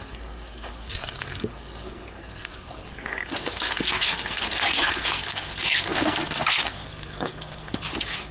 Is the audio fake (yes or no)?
yes